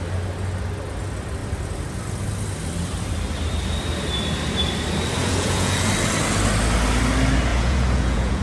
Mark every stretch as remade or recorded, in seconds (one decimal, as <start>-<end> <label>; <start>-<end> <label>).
0.0-5.2 recorded; 5.2-5.9 remade; 5.9-7.5 recorded; 7.5-8.4 remade